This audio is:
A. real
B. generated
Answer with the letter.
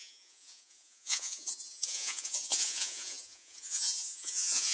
B